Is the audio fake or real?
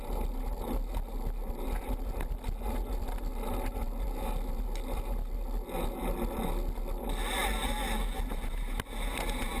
real